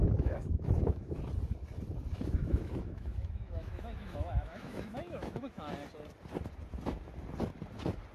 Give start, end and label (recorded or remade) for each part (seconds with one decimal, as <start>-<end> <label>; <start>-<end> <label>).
0.0-1.2 remade; 1.2-2.1 recorded; 2.1-5.7 remade; 5.7-8.1 recorded